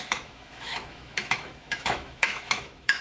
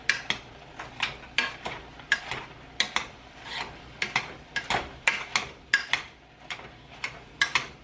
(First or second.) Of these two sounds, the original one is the second